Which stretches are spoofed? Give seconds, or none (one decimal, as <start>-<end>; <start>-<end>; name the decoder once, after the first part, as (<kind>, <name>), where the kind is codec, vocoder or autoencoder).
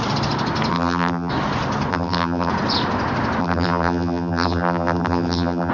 0.7-1.3 (vocoder, BigVGAN v2); 1.9-2.5; 3.4-5.7